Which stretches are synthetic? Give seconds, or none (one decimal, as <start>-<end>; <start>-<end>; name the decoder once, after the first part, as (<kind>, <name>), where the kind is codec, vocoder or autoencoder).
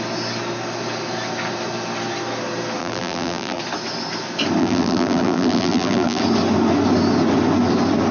2.8-3.6 (vocoder, BigVGAN v2); 4.6-6.2